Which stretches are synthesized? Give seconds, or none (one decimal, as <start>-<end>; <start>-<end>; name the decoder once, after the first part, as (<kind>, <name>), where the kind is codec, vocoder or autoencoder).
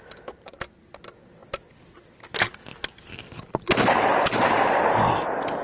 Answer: none